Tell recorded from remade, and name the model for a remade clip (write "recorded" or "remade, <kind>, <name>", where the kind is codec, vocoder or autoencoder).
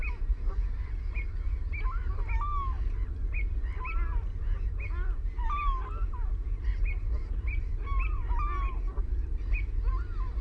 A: recorded